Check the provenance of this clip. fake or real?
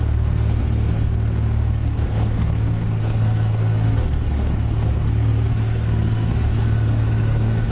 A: fake